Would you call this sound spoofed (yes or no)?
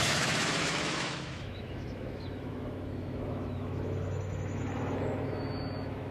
yes